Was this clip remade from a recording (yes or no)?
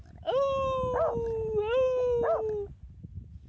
no